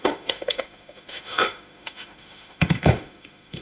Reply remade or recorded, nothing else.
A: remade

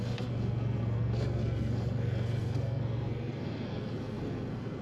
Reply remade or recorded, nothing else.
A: remade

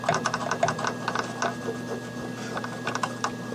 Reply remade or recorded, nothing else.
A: recorded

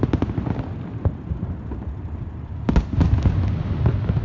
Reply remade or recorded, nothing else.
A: recorded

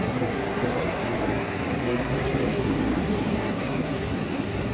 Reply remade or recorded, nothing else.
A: remade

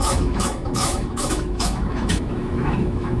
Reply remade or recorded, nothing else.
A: remade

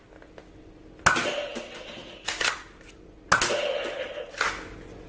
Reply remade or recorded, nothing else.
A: recorded